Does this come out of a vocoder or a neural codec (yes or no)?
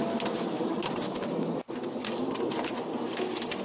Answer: no